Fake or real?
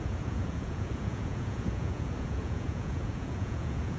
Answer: fake